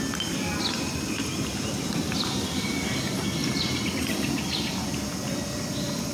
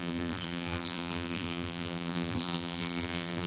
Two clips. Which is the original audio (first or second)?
first